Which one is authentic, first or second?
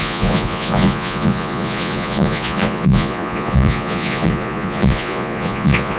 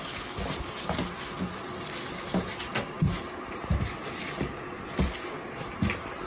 second